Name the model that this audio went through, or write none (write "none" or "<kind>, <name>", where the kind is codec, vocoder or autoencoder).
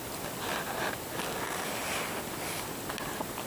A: none